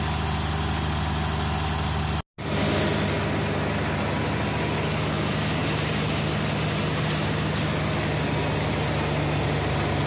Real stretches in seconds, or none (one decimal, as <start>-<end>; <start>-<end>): 0.0-10.1